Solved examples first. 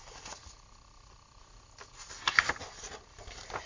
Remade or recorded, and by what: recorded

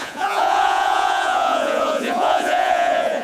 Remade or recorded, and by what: remade, vocoder, Vocos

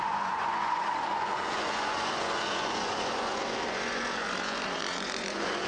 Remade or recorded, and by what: remade, vocoder, Vocos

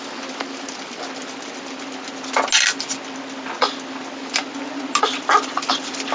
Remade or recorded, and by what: recorded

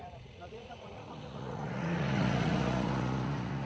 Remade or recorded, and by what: remade, vocoder, Vocos